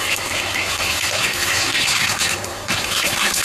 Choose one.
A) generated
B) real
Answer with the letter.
A